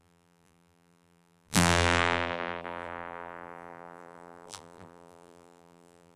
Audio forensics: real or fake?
fake